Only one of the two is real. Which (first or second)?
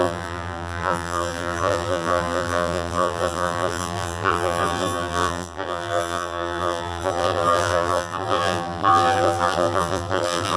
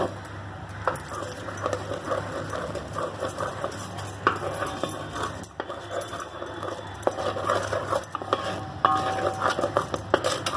second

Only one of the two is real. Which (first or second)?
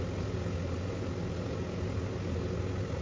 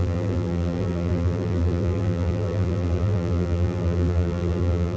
first